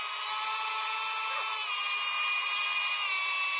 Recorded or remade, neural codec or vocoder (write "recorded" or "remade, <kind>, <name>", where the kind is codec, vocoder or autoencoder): recorded